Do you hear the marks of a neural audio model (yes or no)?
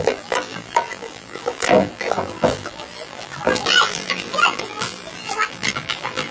yes